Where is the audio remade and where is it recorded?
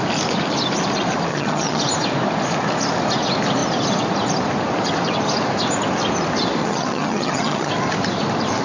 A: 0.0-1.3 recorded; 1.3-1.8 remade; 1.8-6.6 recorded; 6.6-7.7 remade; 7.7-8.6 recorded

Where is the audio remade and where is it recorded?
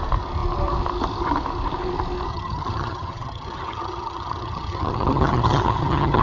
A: 0.0-2.3 recorded; 2.3-6.2 remade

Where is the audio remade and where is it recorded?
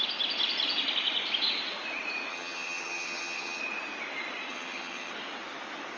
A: 0.0-2.3 recorded; 2.3-3.6 remade; 3.6-4.5 recorded; 4.5-5.1 remade; 5.1-6.0 recorded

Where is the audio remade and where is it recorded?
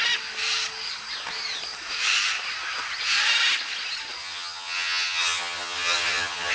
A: 0.0-4.2 recorded; 4.2-6.5 remade